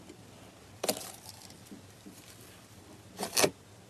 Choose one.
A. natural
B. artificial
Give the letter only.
A